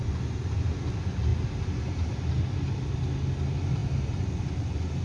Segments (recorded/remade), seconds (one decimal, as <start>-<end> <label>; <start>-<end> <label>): 0.0-5.0 recorded